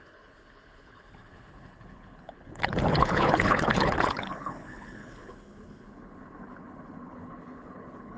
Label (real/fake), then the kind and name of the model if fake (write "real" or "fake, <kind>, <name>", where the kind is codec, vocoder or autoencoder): fake, codec, HILCodec